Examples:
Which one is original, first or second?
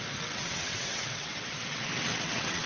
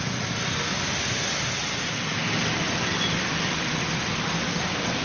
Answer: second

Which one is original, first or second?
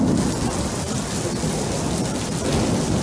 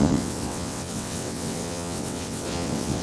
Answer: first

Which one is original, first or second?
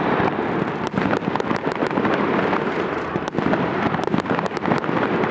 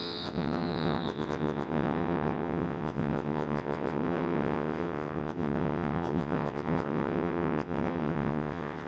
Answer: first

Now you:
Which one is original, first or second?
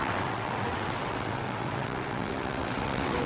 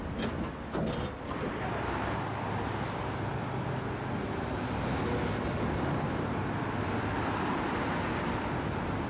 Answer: second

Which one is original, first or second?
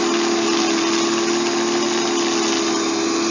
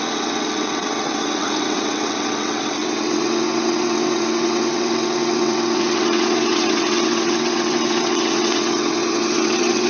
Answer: first